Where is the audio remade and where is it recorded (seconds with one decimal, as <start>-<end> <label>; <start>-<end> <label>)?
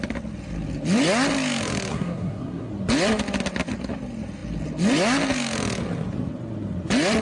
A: 0.0-1.9 recorded; 1.9-2.7 remade; 2.7-7.2 recorded